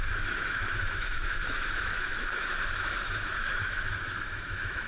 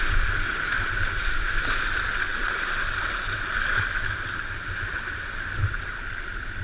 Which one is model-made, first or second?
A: first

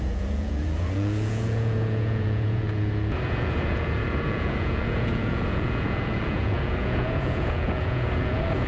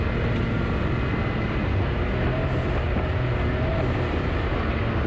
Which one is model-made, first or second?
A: first